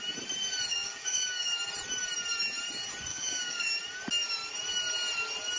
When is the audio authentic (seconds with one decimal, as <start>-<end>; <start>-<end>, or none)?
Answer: 0.0-0.7; 1.6-3.1; 3.7-5.6

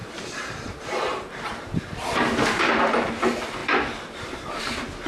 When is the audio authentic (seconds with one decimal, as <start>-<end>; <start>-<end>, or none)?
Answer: 3.1-3.6; 4.6-5.1

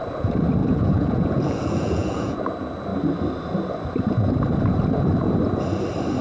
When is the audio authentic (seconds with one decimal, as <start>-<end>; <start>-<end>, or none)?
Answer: 0.0-0.6; 2.4-6.2

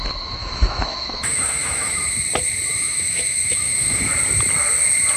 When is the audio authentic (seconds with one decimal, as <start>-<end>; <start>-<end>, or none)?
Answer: 0.0-0.4; 2.1-2.7; 4.1-5.2

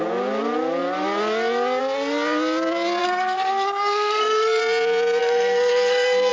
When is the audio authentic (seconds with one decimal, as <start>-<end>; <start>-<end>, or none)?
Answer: 0.0-3.0; 4.6-5.2

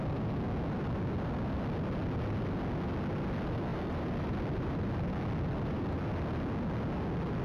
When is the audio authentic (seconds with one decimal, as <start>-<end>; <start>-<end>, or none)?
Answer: 0.0-3.7; 6.0-7.4